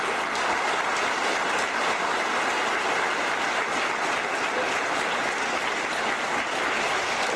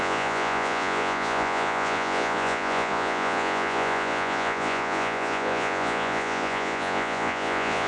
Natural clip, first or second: first